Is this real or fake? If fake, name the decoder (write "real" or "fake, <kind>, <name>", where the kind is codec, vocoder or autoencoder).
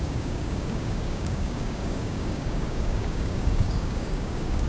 fake, codec, DAC